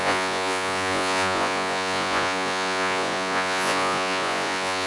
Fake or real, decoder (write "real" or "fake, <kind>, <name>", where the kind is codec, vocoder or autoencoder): fake, vocoder, Vocos